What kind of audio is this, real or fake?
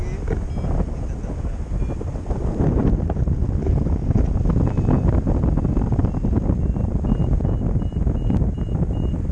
real